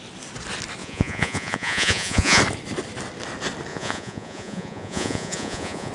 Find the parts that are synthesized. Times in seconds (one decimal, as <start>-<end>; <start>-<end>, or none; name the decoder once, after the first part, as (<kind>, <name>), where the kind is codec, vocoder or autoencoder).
0.8-2.4 (vocoder, Vocos); 3.7-5.9